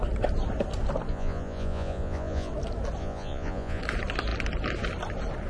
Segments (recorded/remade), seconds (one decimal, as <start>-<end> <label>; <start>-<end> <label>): 0.0-1.1 recorded; 1.1-2.5 remade; 2.5-3.0 recorded; 3.0-3.8 remade; 3.8-5.5 recorded